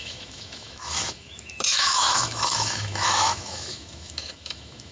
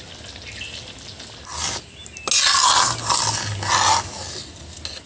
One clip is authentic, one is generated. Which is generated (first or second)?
first